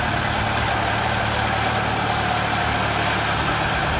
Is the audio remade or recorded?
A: recorded